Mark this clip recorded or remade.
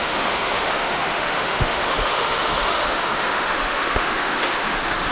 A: remade